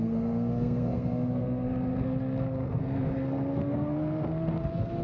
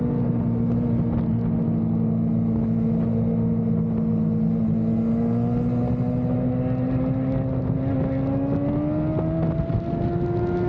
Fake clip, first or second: first